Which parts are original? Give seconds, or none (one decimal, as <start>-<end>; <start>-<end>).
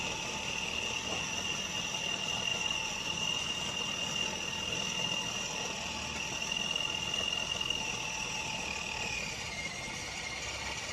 0.0-2.5; 3.5-10.9